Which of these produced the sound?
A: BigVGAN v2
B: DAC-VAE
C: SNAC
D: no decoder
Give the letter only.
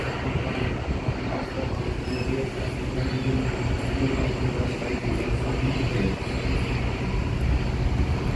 D